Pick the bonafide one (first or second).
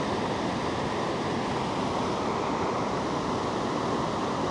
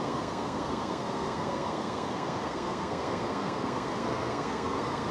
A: first